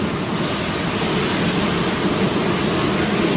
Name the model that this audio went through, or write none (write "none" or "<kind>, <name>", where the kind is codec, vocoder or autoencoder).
none